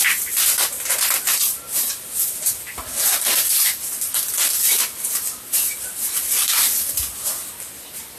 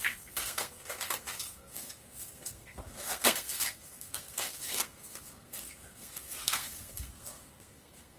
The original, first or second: first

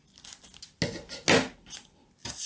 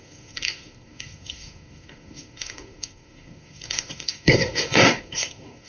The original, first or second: first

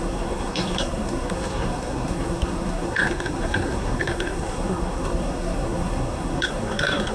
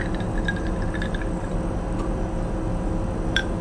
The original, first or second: second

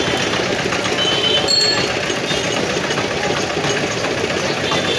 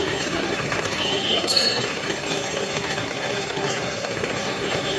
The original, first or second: first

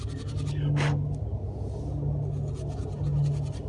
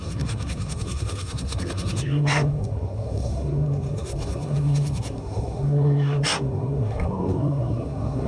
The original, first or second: first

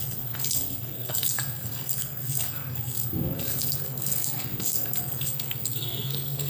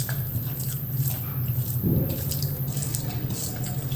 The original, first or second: second